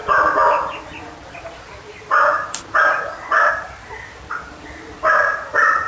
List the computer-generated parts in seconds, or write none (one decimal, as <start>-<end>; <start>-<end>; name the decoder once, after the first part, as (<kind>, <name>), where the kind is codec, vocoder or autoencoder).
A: none